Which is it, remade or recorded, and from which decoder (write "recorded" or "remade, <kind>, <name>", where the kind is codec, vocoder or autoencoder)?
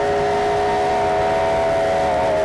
recorded